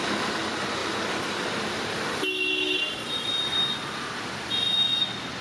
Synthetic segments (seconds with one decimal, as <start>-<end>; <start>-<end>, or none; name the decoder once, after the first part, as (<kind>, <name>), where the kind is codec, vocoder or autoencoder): none